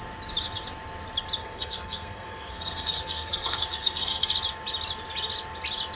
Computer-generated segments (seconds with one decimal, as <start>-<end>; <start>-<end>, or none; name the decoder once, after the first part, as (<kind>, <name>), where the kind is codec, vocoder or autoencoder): 1.4-4.3 (codec, SNAC)